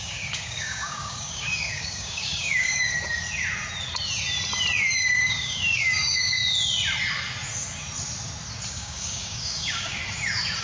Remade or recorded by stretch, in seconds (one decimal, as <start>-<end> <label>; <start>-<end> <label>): 0.0-2.9 remade; 2.9-4.9 recorded; 4.9-6.4 remade; 6.4-8.7 recorded; 8.7-10.0 remade; 10.0-10.6 recorded